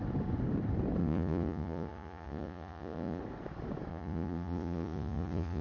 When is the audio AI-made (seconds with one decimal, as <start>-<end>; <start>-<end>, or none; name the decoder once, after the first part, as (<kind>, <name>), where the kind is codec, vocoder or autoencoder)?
1.0-3.2 (vocoder, Vocos); 3.9-5.6